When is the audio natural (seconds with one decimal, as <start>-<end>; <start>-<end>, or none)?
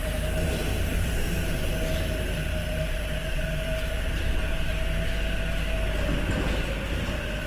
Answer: 4.7-6.6